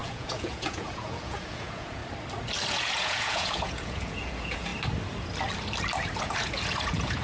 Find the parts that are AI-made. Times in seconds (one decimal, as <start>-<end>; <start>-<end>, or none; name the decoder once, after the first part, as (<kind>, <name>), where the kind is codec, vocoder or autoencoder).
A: 0.0-2.0 (vocoder, Vocos); 2.7-4.7; 6.2-7.2